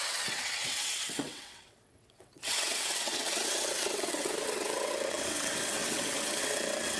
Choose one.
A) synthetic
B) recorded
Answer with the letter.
A